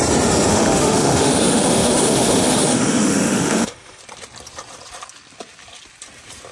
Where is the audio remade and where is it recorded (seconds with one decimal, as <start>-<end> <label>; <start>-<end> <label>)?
0.0-0.5 recorded; 0.5-4.0 remade; 4.0-6.5 recorded